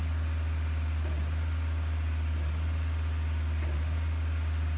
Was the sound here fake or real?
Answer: real